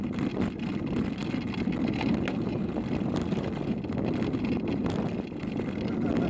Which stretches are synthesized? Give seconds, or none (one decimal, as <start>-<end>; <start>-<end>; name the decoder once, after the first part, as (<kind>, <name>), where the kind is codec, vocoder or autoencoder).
none

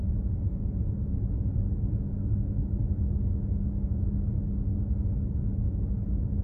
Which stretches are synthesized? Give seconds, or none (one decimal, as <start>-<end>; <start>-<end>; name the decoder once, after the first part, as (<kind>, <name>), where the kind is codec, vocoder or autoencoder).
0.0-1.3 (vocoder, BigVGAN v2)

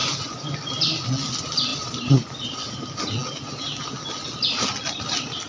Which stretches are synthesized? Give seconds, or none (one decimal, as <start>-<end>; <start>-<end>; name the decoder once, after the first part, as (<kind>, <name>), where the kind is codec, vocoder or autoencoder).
0.0-0.5 (vocoder, BigVGAN v2); 1.7-2.7

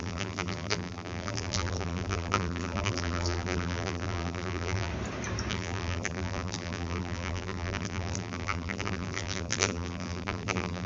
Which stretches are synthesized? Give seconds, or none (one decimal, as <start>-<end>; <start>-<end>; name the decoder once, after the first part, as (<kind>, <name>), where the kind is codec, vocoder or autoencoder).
0.0-4.9 (vocoder, BigVGAN v2); 5.5-10.9

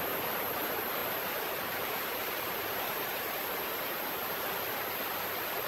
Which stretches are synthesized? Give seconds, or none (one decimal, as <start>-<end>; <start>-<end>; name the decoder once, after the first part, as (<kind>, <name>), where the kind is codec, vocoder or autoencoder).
1.0-4.4 (vocoder, BigVGAN v2)